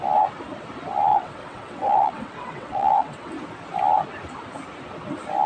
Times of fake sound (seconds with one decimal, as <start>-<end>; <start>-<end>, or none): 1.1-3.3